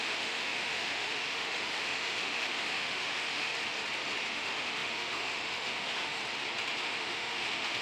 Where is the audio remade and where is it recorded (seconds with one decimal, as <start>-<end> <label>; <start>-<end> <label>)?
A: 0.0-3.5 remade; 3.5-4.3 recorded; 4.3-6.2 remade; 6.2-6.8 recorded; 6.8-7.8 remade